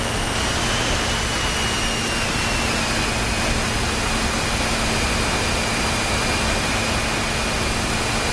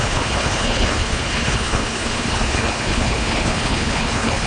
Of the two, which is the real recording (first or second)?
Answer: first